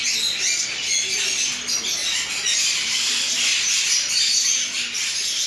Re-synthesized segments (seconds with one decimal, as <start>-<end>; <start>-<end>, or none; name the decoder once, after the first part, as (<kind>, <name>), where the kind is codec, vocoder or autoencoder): none